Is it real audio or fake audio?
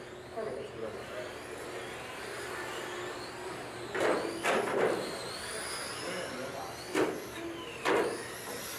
real